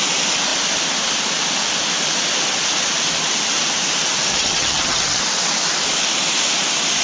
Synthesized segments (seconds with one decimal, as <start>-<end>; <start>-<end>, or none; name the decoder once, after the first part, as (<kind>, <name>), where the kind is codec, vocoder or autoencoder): 4.3-5.2 (vocoder, HiFi-GAN)